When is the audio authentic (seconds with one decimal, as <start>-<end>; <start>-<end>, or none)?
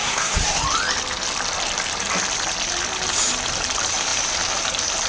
0.6-5.1